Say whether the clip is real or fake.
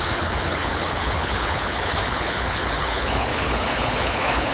fake